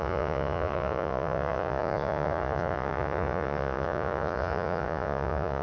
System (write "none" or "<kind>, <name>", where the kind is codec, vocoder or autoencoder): vocoder, Vocos